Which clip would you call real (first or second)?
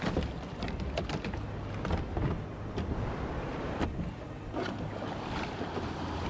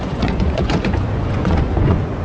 first